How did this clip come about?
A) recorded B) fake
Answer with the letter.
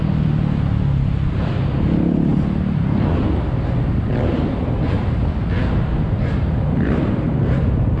A